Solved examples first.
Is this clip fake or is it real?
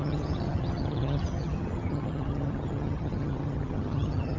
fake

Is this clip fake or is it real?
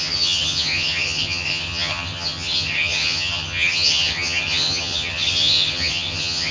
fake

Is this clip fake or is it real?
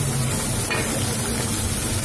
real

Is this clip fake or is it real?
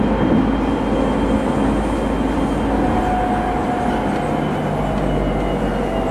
real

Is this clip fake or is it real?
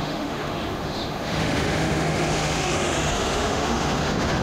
fake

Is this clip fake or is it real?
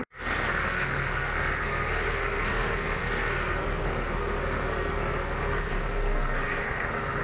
fake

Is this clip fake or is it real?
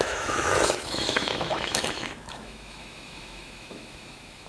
fake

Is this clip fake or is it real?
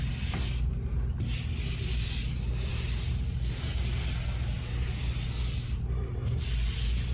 real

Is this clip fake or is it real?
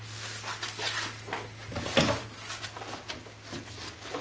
real